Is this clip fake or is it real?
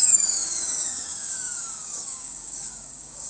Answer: fake